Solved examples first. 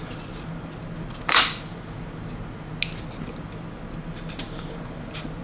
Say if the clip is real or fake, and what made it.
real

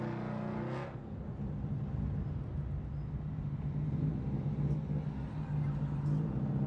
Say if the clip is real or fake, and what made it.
real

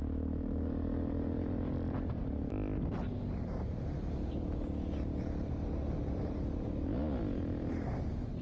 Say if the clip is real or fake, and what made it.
real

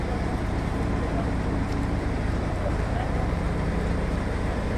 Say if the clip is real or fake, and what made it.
fake, vocoder, BigVGAN v2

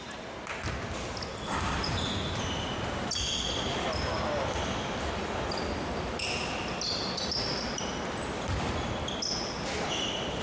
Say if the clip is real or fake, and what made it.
real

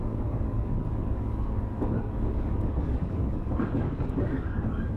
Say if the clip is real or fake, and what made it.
fake, codec, DAC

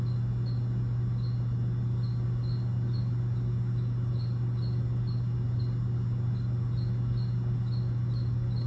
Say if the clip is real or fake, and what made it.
real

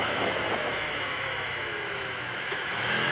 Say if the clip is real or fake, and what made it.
fake, autoencoder, DAC-VAE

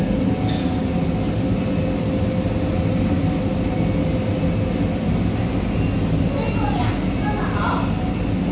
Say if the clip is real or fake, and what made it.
real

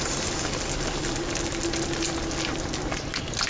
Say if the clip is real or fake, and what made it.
real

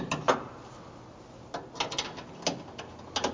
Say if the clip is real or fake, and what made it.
real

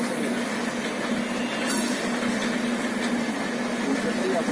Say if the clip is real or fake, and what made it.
real